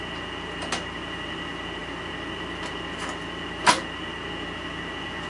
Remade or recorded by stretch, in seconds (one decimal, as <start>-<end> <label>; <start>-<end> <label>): 0.0-5.3 recorded